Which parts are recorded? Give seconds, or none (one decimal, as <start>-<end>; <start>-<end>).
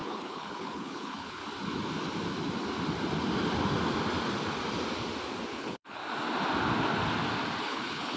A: 1.4-5.5; 6.0-7.6